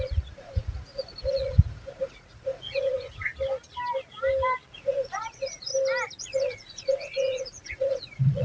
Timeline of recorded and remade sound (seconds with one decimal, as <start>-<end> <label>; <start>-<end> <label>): 0.0-3.3 remade; 3.3-4.7 recorded; 4.7-5.7 remade; 5.7-6.2 recorded; 6.2-8.4 remade